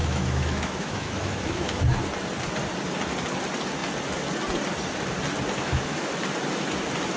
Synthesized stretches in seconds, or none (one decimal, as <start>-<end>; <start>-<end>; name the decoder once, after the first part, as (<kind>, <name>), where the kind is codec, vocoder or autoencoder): 0.0-1.8 (autoencoder, DAC-VAE); 5.6-6.1